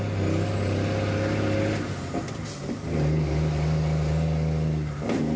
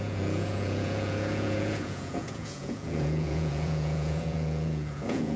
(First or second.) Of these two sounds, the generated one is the second